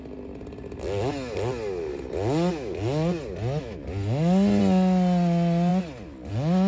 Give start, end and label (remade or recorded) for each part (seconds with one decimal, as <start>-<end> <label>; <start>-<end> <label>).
0.0-6.7 recorded